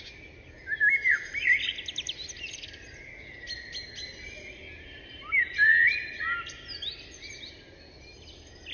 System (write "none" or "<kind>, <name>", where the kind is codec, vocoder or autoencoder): none